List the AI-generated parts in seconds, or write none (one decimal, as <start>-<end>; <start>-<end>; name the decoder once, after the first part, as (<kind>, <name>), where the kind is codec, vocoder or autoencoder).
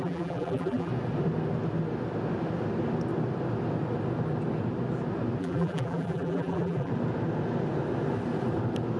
0.0-0.9 (vocoder, BigVGAN v2); 5.4-6.9